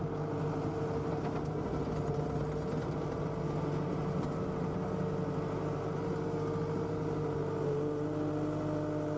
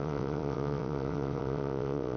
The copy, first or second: second